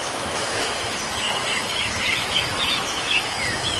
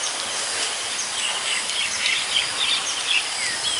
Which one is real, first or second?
second